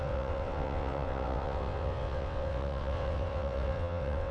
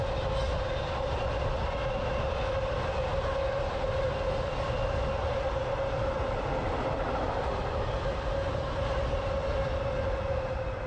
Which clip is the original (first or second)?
second